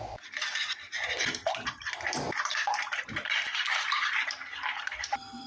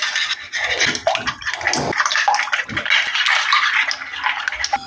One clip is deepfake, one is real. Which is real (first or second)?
second